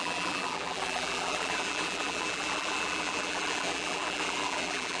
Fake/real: fake